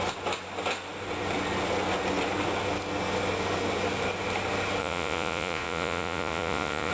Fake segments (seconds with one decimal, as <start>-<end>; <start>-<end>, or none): 4.8-6.9